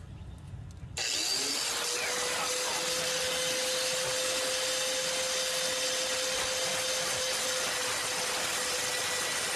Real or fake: real